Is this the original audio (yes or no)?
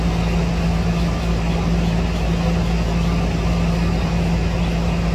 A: yes